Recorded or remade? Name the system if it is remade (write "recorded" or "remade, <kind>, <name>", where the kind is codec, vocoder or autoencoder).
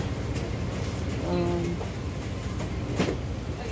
recorded